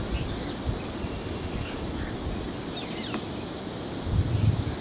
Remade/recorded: recorded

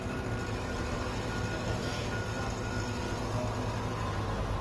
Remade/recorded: recorded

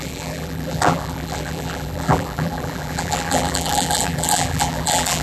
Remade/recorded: remade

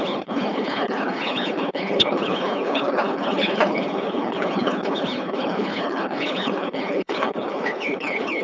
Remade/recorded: remade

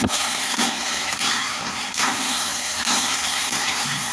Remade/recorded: remade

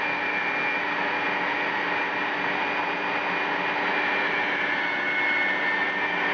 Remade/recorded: recorded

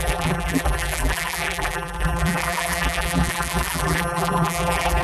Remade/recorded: remade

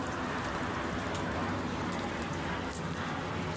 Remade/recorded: recorded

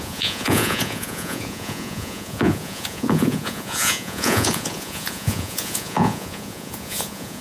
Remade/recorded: remade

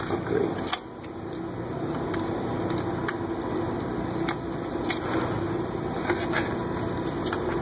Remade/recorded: recorded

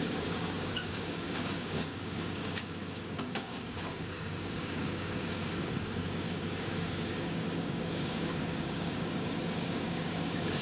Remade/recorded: remade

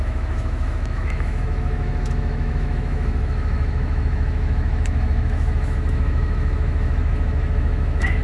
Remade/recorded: remade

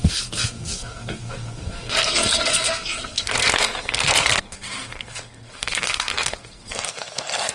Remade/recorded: remade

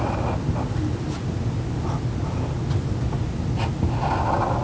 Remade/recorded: recorded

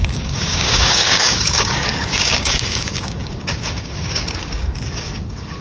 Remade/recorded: remade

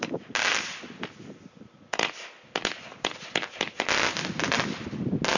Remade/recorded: recorded